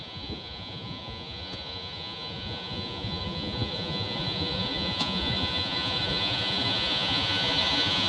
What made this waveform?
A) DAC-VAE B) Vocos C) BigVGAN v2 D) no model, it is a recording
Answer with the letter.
B